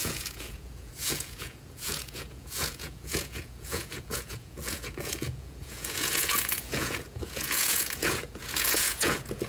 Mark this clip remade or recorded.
remade